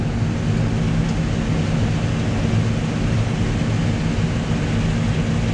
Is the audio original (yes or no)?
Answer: yes